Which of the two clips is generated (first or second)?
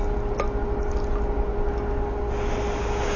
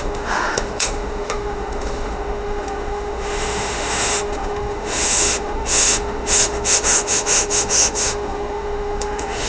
second